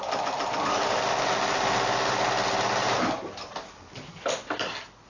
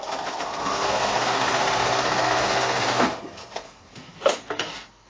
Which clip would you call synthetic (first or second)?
second